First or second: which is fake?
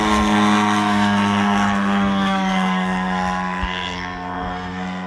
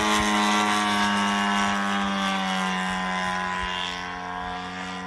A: first